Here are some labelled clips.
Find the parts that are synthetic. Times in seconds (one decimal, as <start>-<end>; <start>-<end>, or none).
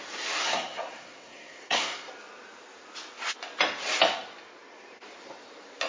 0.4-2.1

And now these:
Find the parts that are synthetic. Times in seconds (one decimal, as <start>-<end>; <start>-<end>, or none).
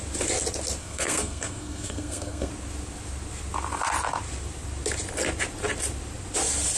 0.8-2.5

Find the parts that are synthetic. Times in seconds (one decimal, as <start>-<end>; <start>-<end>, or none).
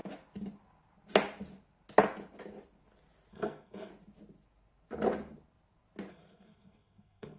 3.3-3.9; 6.1-7.4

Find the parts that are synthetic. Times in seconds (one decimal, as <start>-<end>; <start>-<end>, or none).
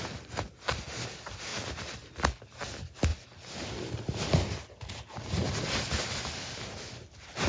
none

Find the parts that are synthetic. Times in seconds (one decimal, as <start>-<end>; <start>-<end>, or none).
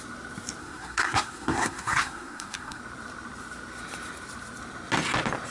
0.6-2.8